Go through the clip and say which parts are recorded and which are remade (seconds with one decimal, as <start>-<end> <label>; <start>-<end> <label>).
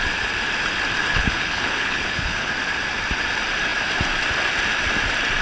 0.0-1.0 recorded; 1.0-2.5 remade; 2.5-5.4 recorded